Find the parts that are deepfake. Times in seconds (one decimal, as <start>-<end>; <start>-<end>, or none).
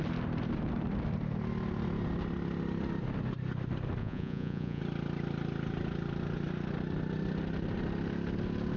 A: 4.0-4.8